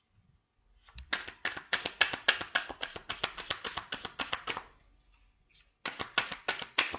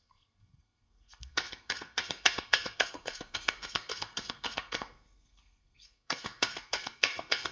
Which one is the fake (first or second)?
second